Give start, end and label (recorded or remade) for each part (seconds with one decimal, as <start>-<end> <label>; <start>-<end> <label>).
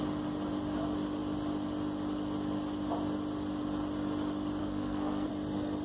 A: 0.0-4.6 recorded; 4.6-5.3 remade; 5.3-5.8 recorded